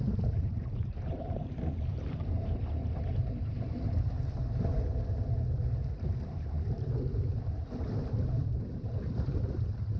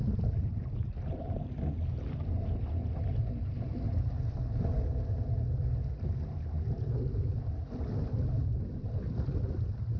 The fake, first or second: first